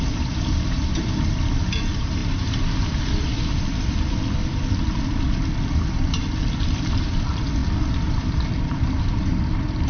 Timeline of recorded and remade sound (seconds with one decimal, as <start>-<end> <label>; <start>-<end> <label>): 0.0-7.6 remade; 7.6-8.2 recorded; 8.2-9.9 remade